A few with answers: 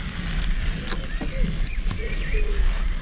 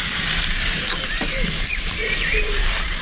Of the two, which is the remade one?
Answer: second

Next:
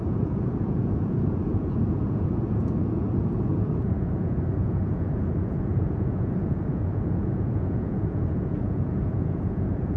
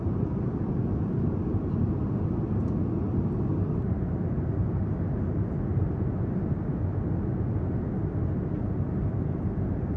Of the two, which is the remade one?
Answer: first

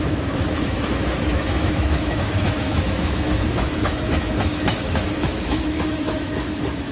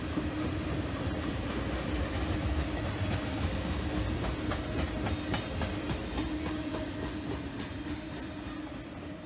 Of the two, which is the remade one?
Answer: first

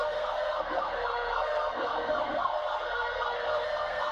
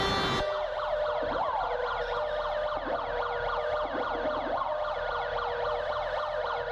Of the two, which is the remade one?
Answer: first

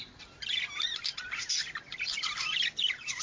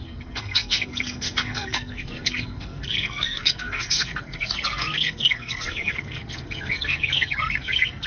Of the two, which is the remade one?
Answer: second